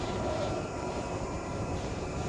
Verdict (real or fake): fake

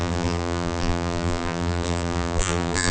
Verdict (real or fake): fake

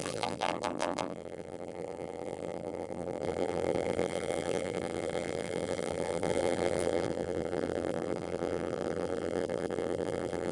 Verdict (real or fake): fake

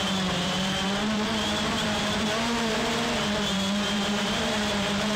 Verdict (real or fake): fake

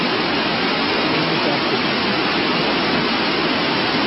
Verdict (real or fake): real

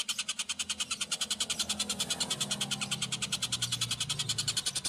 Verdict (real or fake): real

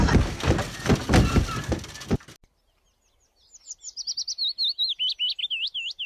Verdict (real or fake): real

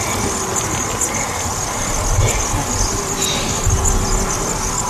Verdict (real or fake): real